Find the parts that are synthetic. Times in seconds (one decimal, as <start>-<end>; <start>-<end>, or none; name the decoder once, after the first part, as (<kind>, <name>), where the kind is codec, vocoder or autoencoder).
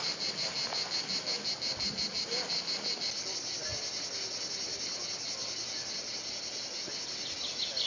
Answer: none